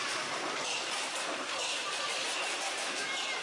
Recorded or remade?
remade